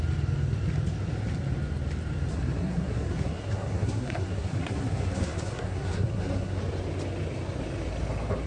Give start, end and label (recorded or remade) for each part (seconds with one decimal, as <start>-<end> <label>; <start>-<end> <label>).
0.0-2.3 recorded; 2.3-6.6 remade; 6.6-8.5 recorded